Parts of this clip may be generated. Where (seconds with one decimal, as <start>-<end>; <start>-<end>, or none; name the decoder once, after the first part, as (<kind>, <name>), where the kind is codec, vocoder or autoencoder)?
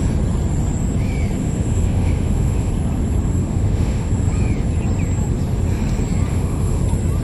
1.4-2.7 (autoencoder, DAC-VAE); 3.4-4.1; 6.3-6.8